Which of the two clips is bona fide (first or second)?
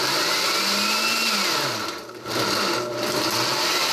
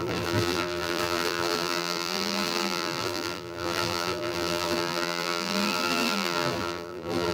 first